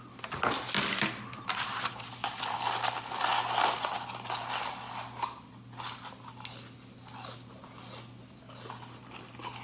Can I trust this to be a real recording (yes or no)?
yes